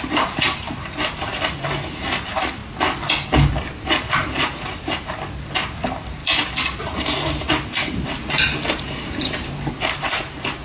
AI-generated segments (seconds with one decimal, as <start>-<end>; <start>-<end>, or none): 0.0-2.6; 4.1-6.2; 6.8-10.6